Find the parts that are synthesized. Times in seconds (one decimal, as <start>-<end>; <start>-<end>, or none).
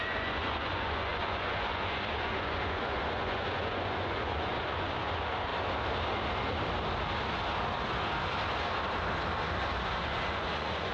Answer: 0.0-5.5; 10.0-10.9